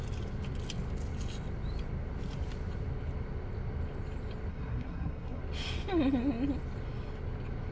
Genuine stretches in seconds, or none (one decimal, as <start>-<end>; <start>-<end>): 0.0-4.5; 5.4-7.7